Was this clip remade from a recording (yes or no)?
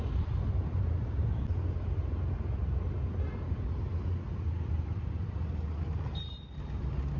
no